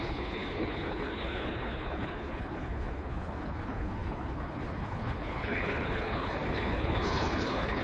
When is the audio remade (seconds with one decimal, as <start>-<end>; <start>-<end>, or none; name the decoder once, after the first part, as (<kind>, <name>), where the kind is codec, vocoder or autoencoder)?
0.0-7.8 (codec, HILCodec)